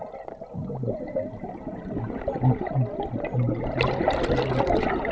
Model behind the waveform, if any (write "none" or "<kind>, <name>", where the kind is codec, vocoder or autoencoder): none